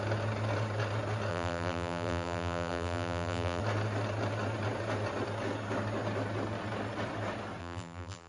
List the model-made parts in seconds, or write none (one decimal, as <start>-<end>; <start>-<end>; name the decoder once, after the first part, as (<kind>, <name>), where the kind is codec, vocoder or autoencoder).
1.3-3.6 (vocoder, BigVGAN v2); 7.6-8.3